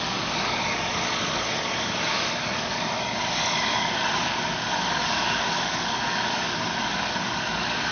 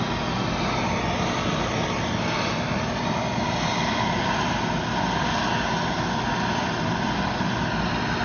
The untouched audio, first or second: second